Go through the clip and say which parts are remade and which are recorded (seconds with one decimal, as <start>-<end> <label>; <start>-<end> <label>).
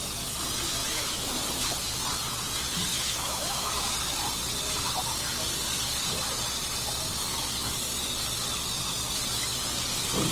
0.0-0.8 recorded; 0.8-1.3 remade; 1.3-2.9 recorded; 2.9-3.7 remade; 3.7-10.3 recorded